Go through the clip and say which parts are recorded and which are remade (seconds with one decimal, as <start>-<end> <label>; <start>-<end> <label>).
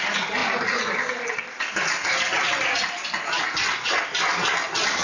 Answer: 0.0-5.0 recorded